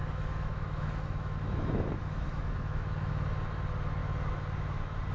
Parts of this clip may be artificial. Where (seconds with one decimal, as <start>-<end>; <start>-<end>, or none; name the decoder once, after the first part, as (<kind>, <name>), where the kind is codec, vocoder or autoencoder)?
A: 0.0-3.1 (autoencoder, DAC-VAE)